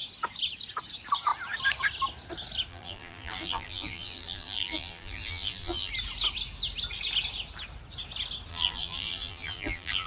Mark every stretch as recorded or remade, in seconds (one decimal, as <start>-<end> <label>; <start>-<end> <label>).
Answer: 0.0-2.7 recorded; 2.7-5.9 remade; 5.9-8.5 recorded; 8.5-10.1 remade